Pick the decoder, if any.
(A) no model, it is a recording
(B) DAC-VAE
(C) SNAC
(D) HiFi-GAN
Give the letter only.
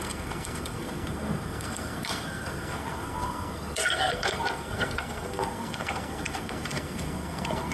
C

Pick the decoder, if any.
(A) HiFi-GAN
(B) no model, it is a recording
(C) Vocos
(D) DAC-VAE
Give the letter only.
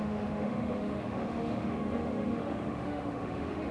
D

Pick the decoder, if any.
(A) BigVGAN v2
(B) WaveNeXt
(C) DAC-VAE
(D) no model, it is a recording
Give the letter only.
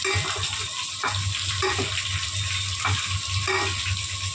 D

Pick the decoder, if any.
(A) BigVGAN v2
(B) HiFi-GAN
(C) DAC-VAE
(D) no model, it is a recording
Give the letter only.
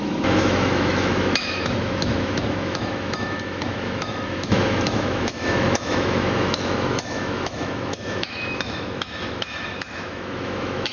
C